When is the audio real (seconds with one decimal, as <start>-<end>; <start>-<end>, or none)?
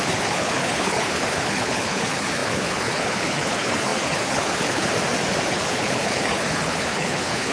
4.9-5.5